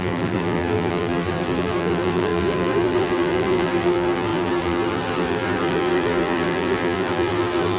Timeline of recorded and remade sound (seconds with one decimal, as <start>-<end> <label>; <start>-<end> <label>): 0.0-7.8 remade